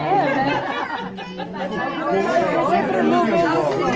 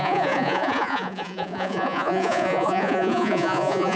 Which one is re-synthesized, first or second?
second